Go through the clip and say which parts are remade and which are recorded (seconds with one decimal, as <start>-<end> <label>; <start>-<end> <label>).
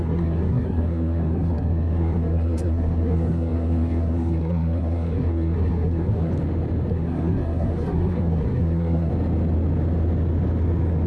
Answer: 0.0-6.3 remade; 6.3-6.9 recorded; 6.9-9.1 remade; 9.1-11.1 recorded